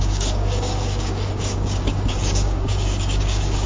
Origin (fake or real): fake